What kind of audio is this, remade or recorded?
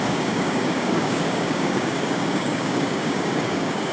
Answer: remade